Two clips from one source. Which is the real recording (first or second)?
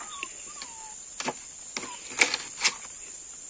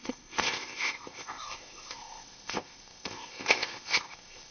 first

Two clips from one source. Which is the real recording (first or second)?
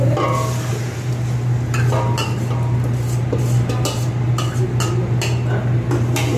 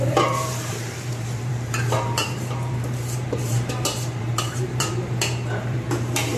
first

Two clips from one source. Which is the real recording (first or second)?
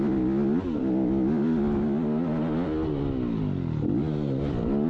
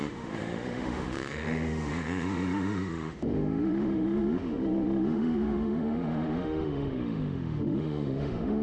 first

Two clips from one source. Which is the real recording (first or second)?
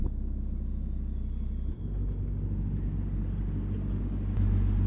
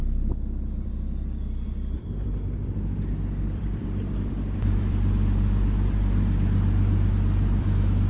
first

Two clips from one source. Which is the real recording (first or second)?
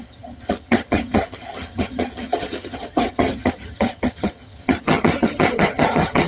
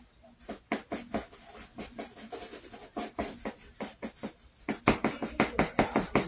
second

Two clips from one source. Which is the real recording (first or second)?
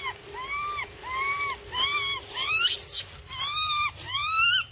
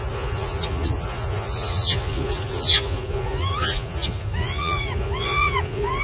first